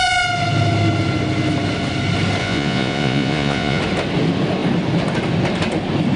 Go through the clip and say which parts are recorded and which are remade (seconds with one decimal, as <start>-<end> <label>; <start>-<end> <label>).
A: 0.0-2.4 recorded; 2.4-3.8 remade; 3.8-6.2 recorded